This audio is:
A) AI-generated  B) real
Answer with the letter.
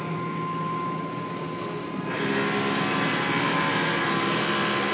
B